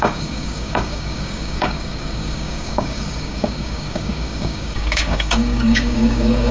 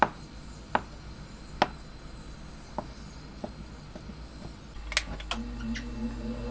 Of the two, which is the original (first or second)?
second